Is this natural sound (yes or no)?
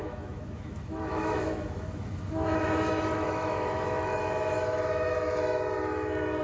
no